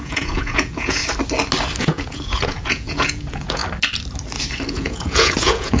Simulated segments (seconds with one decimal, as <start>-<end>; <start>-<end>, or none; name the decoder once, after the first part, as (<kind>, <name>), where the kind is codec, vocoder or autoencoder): 0.0-1.0 (vocoder, Vocos); 1.8-3.6; 4.7-5.8